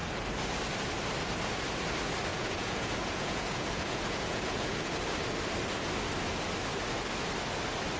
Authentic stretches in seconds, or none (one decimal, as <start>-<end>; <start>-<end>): 0.0-2.3; 5.0-8.0